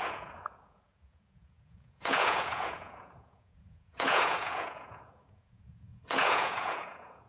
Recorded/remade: remade